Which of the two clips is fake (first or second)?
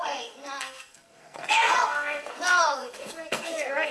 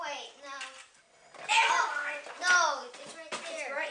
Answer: first